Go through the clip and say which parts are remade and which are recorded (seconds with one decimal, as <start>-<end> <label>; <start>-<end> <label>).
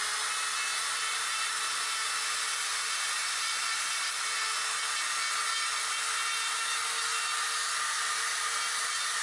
0.0-0.7 recorded; 0.7-1.5 remade; 1.5-3.2 recorded; 3.2-4.1 remade; 4.1-9.2 recorded